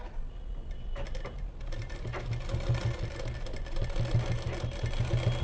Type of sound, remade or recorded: recorded